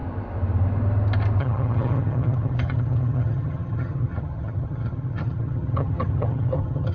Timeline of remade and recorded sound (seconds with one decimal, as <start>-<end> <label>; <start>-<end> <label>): 0.0-1.4 recorded; 1.4-6.9 remade